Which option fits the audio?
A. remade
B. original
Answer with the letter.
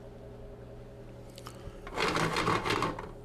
B